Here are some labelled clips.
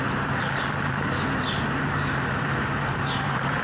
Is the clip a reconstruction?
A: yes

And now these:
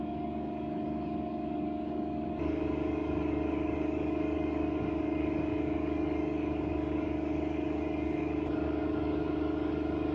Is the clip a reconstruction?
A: yes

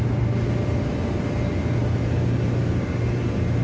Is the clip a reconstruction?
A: no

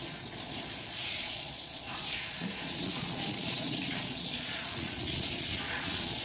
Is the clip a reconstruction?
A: yes